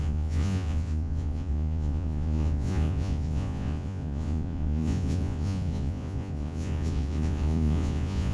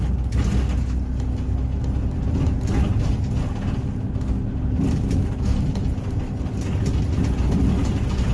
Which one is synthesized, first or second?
first